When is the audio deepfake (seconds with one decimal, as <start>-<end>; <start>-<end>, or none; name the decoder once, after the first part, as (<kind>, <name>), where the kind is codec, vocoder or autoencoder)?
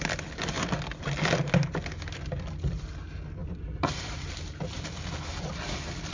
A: 3.4-4.3 (vocoder, BigVGAN v2)